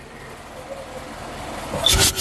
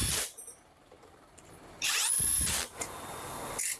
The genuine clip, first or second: first